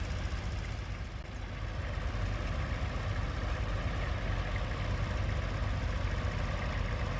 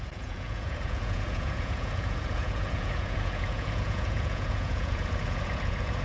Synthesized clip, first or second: second